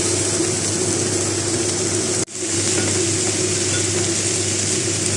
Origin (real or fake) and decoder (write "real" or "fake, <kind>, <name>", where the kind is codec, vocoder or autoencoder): real